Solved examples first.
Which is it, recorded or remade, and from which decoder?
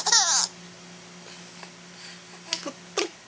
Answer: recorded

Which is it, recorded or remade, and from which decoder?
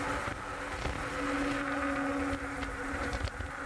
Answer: recorded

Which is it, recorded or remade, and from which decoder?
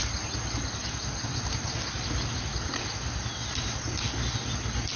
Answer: recorded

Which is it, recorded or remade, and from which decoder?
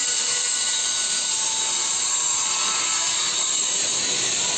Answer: remade, vocoder, BigVGAN v2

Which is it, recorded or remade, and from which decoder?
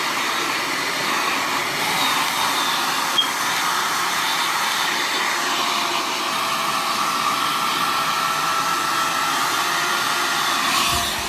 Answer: recorded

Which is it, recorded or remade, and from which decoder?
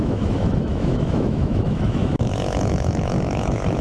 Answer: remade, autoencoder, DAC-VAE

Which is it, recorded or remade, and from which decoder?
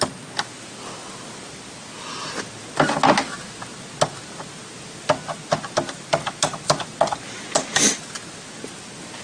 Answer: recorded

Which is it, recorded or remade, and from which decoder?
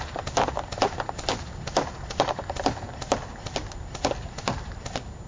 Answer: recorded